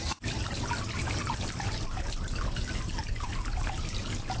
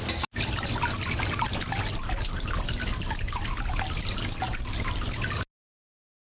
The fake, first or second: first